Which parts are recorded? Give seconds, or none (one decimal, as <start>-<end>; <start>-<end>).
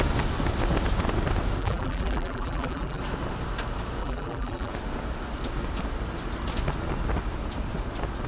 0.0-1.6; 3.0-4.0; 4.7-8.3